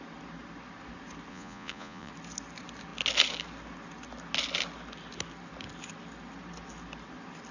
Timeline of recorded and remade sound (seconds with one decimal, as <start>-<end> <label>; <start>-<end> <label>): 0.0-1.3 recorded; 1.3-2.1 remade; 2.1-7.5 recorded

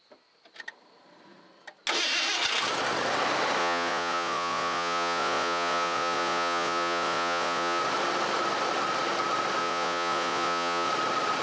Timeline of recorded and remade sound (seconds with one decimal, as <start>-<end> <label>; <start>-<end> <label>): 0.0-3.6 recorded; 3.6-7.8 remade; 7.8-9.6 recorded; 9.6-10.9 remade; 10.9-11.4 recorded

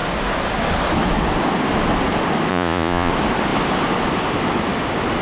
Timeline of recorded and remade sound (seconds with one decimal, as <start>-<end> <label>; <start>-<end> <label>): 0.0-2.5 recorded; 2.5-3.1 remade; 3.1-5.2 recorded

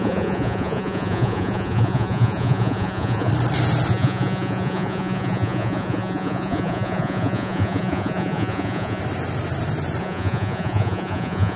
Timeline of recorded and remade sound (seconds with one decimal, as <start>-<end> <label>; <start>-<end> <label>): 0.0-3.3 remade; 3.3-3.9 recorded; 3.9-9.0 remade; 9.0-10.0 recorded; 10.0-11.6 remade

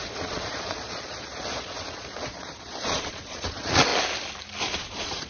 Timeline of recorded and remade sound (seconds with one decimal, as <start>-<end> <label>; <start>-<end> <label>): 0.0-3.9 remade; 3.9-4.6 recorded; 4.6-5.3 remade

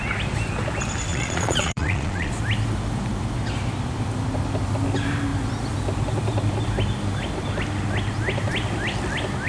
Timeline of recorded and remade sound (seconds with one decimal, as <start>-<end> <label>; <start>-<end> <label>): 0.0-1.1 recorded; 1.1-2.3 remade; 2.3-9.5 recorded

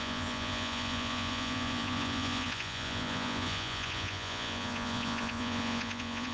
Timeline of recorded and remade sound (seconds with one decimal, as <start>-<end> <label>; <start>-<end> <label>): 0.0-6.3 remade